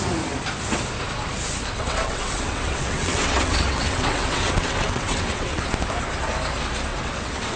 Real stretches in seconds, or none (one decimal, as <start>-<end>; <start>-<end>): 0.0-1.8; 5.6-6.9